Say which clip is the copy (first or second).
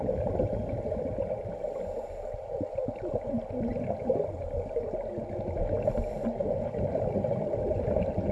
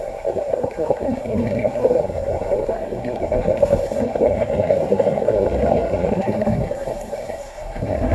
second